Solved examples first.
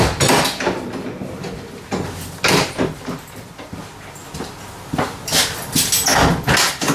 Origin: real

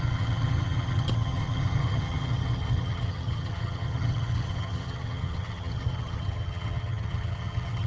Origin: fake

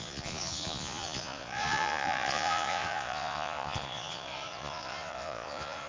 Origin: fake